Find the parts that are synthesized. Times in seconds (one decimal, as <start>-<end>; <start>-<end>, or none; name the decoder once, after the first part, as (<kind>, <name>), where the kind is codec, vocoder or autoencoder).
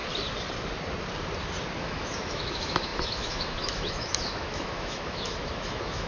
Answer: 1.8-6.1 (autoencoder, DAC-VAE)